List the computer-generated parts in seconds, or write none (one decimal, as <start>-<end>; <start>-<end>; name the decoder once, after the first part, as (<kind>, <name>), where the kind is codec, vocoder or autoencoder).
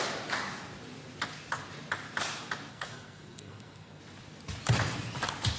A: 2.7-4.0 (codec, SNAC)